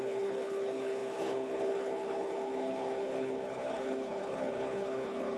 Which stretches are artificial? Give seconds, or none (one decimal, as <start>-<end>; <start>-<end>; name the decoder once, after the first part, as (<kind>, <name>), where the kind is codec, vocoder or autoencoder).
0.0-5.4 (codec, HILCodec)